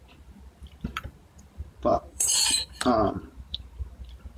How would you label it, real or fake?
fake